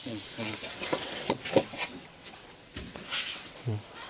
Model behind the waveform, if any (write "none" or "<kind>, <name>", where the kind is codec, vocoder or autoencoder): vocoder, WaveNeXt